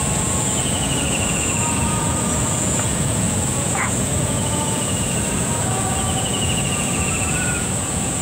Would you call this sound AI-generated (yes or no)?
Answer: yes